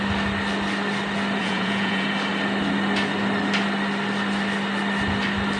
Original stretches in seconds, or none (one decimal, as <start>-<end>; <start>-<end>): 0.0-1.4; 2.1-5.6